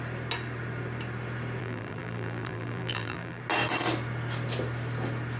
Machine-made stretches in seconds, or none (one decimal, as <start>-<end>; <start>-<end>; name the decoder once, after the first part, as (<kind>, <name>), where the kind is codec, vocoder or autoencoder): 1.6-3.4 (vocoder, BigVGAN v2)